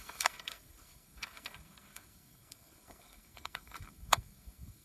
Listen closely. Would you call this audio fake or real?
fake